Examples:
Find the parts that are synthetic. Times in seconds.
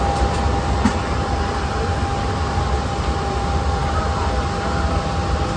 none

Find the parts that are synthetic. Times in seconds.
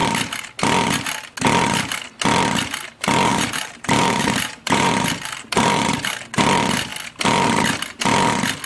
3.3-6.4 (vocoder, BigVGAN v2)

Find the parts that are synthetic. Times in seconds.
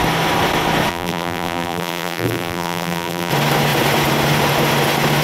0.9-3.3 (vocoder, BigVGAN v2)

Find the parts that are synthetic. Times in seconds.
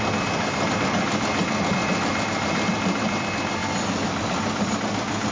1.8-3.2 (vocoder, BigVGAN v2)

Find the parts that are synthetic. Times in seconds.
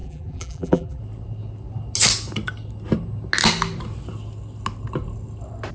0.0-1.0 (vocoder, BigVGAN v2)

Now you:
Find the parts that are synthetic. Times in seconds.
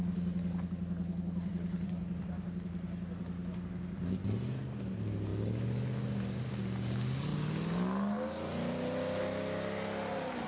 none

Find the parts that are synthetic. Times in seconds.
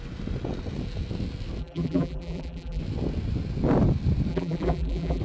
1.6-2.8 (vocoder, BigVGAN v2); 4.3-5.2